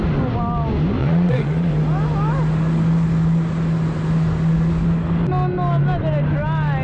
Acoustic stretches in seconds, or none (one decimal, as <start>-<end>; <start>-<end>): 0.0-1.0; 1.7-6.8

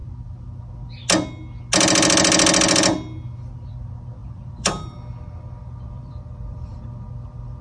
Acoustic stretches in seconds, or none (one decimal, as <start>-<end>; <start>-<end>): 0.0-4.2; 6.8-7.6

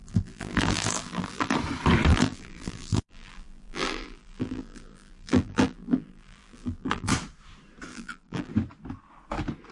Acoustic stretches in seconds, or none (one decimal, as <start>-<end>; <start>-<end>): 1.5-2.1; 7.1-7.9; 8.5-9.7

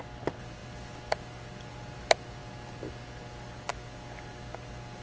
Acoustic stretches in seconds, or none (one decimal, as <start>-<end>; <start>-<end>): 0.0-5.0